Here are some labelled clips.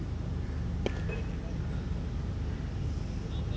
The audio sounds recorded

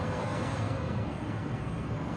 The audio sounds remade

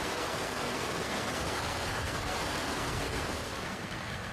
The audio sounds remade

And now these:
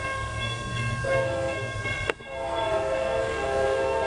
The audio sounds remade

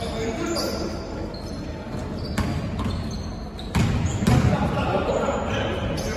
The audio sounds recorded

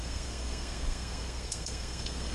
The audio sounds remade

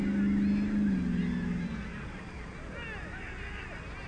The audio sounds recorded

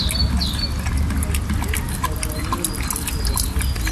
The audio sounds recorded